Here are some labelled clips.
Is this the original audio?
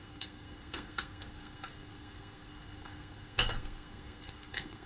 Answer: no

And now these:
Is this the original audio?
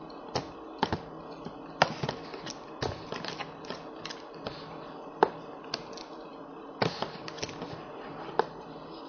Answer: yes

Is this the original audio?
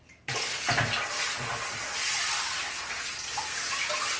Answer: yes